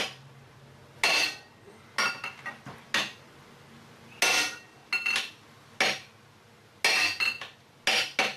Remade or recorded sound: recorded